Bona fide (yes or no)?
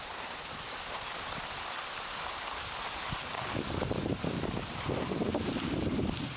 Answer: yes